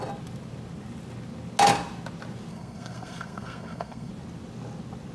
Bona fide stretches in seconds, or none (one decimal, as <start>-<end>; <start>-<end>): 0.0-2.5; 4.1-5.1